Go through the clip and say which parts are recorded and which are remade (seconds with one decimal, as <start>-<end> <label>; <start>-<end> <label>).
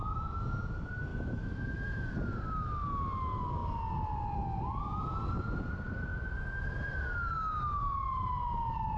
0.0-1.1 recorded; 1.1-2.1 remade; 2.1-9.0 recorded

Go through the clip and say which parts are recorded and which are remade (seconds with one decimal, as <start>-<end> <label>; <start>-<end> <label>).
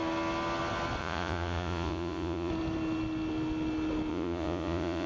0.0-1.0 recorded; 1.0-2.5 remade; 2.5-4.1 recorded; 4.1-5.1 remade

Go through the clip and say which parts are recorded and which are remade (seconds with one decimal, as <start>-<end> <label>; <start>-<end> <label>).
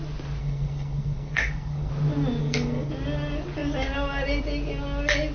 0.0-0.4 recorded; 0.4-1.9 remade; 1.9-2.4 recorded; 2.4-2.9 remade; 2.9-5.3 recorded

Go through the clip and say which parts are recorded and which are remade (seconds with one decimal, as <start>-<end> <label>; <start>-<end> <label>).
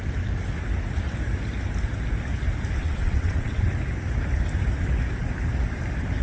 0.0-2.8 recorded; 2.8-3.7 remade; 3.7-6.2 recorded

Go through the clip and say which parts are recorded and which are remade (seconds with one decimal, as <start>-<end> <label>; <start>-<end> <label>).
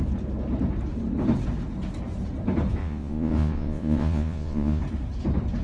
0.0-2.8 recorded; 2.8-4.8 remade; 4.8-5.6 recorded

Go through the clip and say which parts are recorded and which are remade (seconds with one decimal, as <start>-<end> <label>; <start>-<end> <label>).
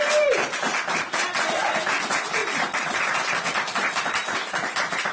0.0-0.7 recorded; 0.7-1.6 remade; 1.6-2.4 recorded; 2.4-4.1 remade; 4.1-5.1 recorded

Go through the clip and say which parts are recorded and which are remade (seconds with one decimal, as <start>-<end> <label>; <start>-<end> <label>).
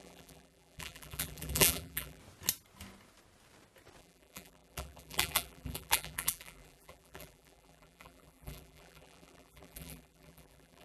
0.0-2.2 remade; 2.2-4.0 recorded; 4.0-10.8 remade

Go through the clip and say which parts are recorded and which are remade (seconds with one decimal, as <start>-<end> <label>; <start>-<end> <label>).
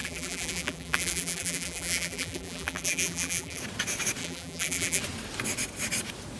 0.0-3.6 remade; 3.6-4.2 recorded; 4.2-5.0 remade; 5.0-6.4 recorded